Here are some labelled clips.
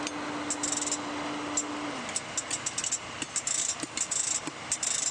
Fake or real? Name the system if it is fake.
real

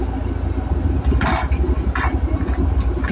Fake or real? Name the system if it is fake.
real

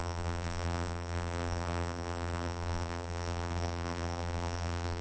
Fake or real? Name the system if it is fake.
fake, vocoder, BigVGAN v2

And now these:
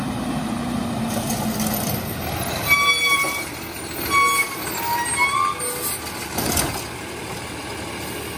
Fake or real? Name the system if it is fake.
real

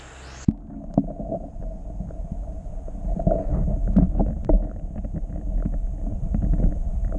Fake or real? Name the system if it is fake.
real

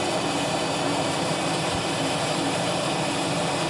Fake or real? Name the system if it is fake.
fake, vocoder, BigVGAN v2